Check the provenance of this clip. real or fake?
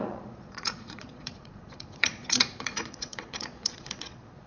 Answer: fake